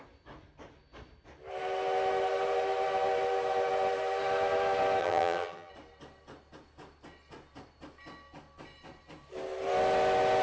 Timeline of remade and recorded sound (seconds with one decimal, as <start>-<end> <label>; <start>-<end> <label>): 0.0-5.0 recorded; 5.0-5.7 remade; 5.7-10.4 recorded